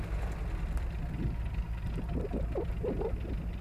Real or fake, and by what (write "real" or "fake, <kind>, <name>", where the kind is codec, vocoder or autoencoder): real